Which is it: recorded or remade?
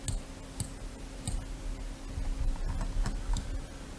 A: recorded